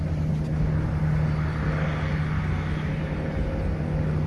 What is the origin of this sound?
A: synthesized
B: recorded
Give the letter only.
B